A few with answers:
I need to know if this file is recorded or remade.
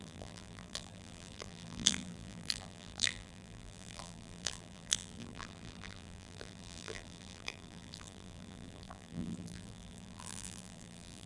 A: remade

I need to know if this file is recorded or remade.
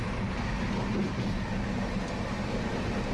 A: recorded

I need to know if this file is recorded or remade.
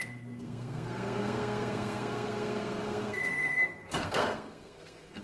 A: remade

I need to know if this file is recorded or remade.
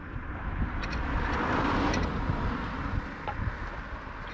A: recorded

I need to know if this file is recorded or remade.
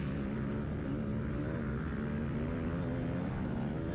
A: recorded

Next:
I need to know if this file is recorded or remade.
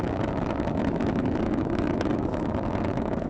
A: remade